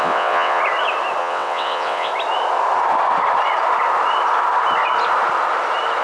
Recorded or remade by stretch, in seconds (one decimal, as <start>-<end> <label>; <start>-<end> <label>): 0.0-0.6 remade; 0.6-1.2 recorded; 1.2-2.1 remade; 2.1-6.0 recorded